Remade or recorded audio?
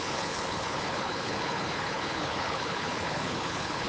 remade